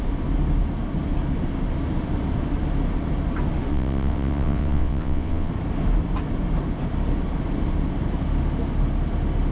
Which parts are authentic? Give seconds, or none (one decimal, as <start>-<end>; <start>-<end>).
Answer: 0.0-3.7; 5.5-9.5